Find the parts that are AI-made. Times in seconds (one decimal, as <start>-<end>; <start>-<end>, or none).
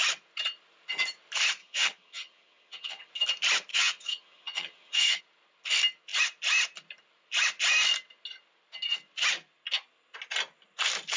1.6-3.1; 3.7-5.2